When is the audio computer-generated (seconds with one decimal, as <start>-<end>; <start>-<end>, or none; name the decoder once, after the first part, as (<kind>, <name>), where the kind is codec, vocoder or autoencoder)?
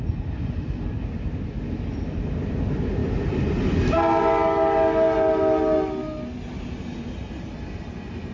none